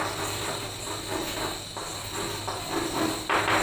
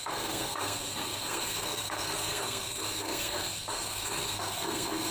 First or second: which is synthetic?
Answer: second